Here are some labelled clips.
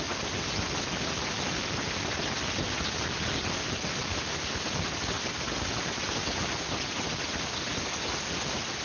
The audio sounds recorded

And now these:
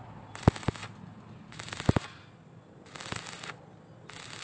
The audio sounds recorded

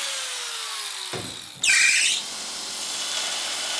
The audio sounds recorded